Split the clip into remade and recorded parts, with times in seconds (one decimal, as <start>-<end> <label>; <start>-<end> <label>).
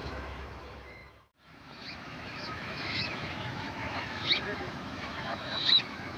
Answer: 0.0-6.2 remade